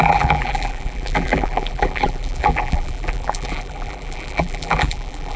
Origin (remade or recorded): remade